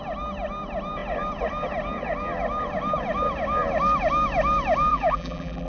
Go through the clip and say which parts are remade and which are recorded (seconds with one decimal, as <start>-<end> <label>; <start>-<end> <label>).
0.0-4.9 recorded; 4.9-5.7 remade